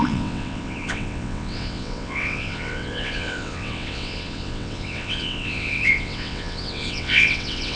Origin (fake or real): fake